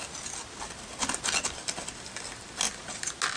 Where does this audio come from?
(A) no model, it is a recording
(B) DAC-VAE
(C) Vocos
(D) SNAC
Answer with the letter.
A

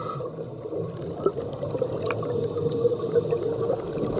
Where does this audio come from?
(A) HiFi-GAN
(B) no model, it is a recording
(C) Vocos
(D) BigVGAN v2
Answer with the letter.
B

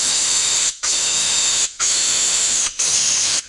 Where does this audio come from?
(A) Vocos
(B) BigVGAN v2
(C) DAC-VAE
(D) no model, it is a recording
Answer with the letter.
C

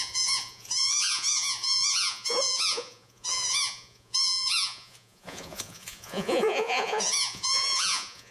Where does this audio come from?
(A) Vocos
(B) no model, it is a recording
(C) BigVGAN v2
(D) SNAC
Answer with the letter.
A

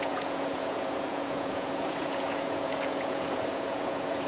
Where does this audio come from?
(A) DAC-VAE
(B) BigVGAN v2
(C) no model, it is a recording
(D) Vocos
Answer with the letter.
D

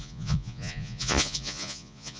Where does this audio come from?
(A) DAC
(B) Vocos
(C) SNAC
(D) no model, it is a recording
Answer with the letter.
B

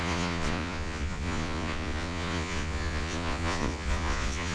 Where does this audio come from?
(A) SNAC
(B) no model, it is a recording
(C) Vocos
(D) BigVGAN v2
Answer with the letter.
C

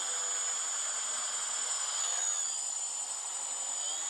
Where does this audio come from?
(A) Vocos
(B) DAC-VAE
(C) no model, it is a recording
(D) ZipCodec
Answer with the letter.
C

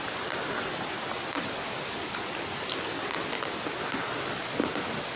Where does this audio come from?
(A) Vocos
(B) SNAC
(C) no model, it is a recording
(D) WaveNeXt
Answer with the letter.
C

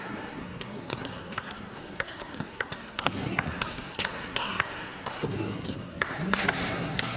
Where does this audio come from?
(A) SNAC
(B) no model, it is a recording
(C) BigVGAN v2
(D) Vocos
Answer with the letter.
A